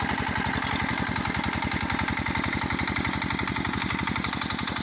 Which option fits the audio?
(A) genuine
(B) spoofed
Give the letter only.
A